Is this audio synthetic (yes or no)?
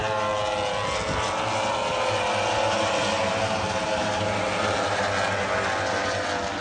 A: no